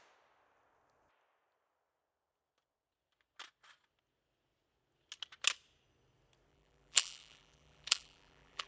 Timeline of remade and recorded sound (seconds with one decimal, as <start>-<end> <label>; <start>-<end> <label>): 0.0-6.5 recorded; 6.5-8.7 remade